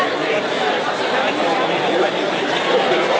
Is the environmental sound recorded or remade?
recorded